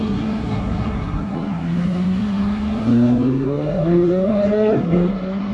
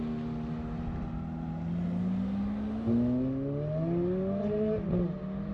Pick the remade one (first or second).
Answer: first